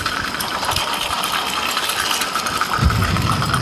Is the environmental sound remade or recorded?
recorded